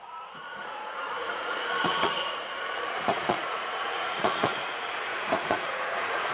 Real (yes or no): no